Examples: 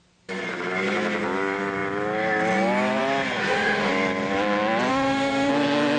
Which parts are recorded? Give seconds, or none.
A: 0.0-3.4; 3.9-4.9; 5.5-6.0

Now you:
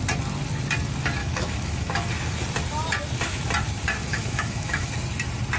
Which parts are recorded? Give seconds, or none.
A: 0.0-1.2; 2.1-4.1; 4.9-5.6

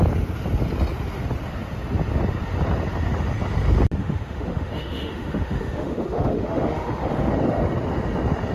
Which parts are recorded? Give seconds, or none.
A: 0.0-4.0; 7.3-8.5

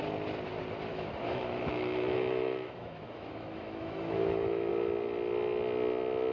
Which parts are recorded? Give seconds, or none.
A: 0.0-0.9; 4.7-6.3

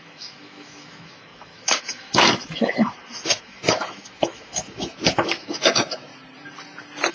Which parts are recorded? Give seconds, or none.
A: 6.1-7.1

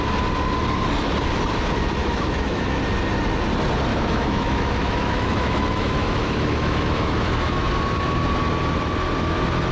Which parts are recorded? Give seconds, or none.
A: 0.0-2.0; 2.8-3.9; 7.7-9.7